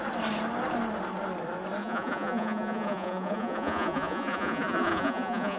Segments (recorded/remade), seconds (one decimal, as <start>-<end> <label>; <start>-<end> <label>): 0.0-1.8 recorded; 1.8-5.6 remade